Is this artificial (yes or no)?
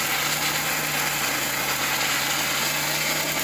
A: no